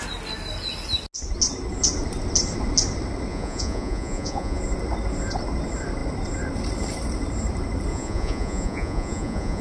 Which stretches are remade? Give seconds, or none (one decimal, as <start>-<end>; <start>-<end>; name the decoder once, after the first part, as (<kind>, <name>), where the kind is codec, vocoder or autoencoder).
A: 3.3-4.6 (vocoder, Vocos); 7.9-9.6